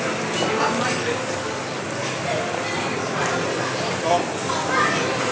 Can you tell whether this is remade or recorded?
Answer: recorded